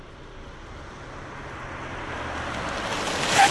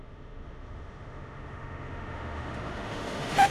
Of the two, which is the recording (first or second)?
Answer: first